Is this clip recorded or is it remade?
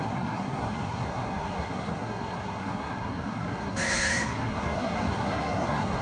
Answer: remade